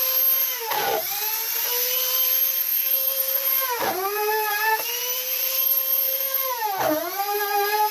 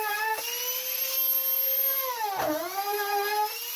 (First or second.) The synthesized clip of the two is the first